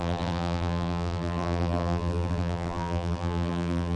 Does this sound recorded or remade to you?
remade